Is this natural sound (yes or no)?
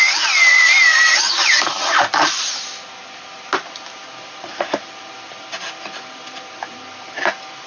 yes